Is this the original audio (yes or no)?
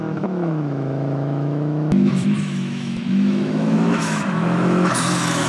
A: no